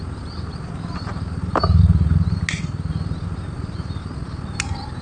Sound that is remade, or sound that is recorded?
recorded